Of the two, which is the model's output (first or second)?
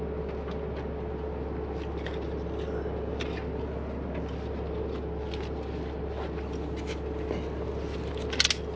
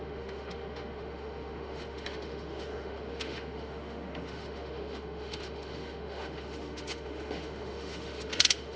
second